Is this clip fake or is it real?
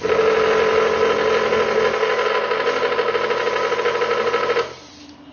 real